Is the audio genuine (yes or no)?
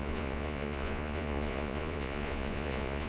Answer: no